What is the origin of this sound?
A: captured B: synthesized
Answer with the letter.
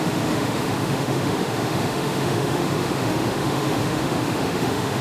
B